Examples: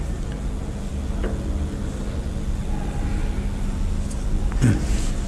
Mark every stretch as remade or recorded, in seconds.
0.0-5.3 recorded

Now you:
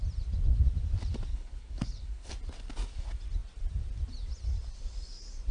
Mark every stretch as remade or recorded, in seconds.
0.0-1.3 recorded; 1.3-2.3 remade; 2.3-5.5 recorded

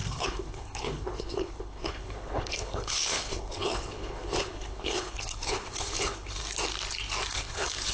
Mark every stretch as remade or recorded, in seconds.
0.0-6.4 remade; 6.4-7.3 recorded; 7.3-7.9 remade

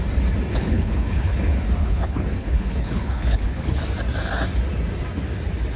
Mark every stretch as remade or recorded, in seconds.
0.0-0.5 recorded; 0.5-1.4 remade; 1.4-1.8 recorded; 1.8-3.8 remade; 3.8-5.8 recorded